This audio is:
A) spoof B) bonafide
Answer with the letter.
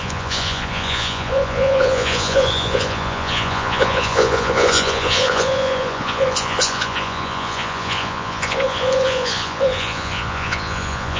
A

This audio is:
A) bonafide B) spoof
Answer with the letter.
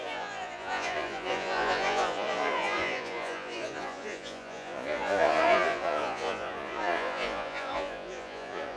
B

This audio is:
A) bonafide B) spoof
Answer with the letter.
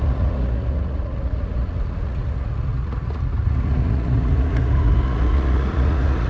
B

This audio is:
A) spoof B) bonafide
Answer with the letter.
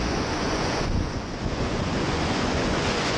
A